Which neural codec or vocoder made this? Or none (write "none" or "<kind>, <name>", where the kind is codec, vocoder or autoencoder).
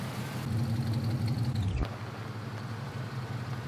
vocoder, BigVGAN v2